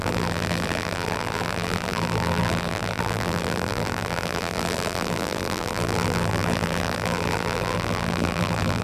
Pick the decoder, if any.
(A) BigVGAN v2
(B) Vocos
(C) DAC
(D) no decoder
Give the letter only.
A